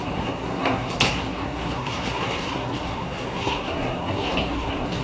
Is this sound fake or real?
fake